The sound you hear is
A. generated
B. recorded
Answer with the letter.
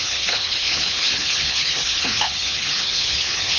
A